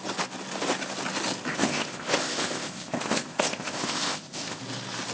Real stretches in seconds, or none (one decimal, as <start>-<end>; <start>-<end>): 0.0-1.5; 4.6-5.1